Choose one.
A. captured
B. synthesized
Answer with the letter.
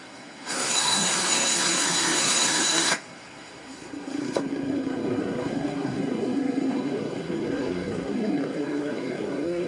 B